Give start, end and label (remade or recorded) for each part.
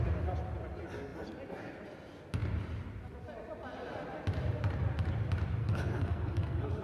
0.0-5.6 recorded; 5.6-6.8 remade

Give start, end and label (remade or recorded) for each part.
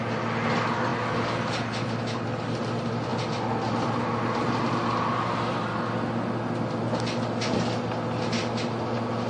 0.0-9.3 recorded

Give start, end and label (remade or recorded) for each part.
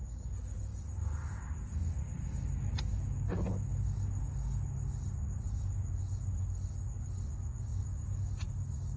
0.0-9.0 recorded